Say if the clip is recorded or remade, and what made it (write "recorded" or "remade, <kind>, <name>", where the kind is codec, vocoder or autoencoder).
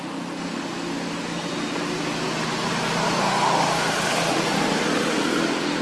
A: recorded